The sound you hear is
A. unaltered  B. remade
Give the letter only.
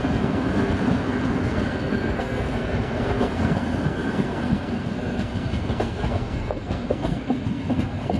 B